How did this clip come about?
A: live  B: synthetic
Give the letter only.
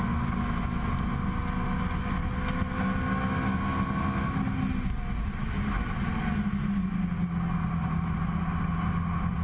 A